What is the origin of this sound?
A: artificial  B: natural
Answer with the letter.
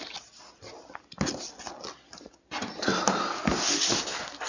B